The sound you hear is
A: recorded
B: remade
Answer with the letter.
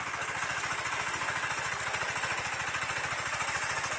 A